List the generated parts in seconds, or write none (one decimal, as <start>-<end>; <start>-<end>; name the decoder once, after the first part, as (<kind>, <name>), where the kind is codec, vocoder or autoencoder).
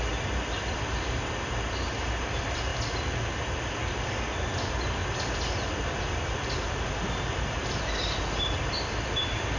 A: none